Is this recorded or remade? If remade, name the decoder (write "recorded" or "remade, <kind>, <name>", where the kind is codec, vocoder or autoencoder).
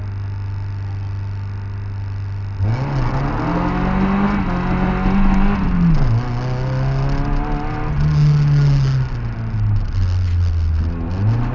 recorded